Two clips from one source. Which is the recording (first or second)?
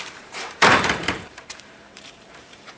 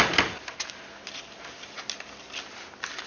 second